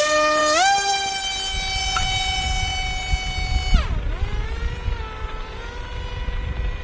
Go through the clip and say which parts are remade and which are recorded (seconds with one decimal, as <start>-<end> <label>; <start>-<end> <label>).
0.0-0.4 remade; 0.4-0.9 recorded; 0.9-2.7 remade; 2.7-4.1 recorded; 4.1-6.8 remade